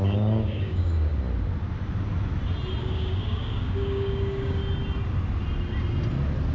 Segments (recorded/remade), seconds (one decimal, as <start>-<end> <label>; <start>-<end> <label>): 0.0-1.1 remade; 1.1-2.8 recorded; 2.8-4.6 remade; 4.6-6.5 recorded